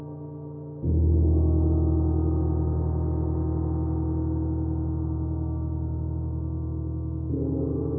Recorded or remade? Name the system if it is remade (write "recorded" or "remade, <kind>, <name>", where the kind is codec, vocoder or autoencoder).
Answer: recorded